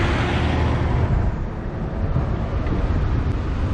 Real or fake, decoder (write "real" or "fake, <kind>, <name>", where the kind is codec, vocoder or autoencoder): real